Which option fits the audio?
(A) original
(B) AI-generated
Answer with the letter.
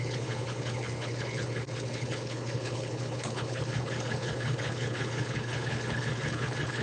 B